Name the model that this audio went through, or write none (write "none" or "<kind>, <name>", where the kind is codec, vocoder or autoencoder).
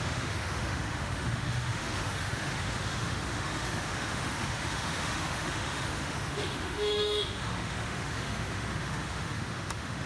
autoencoder, DAC-VAE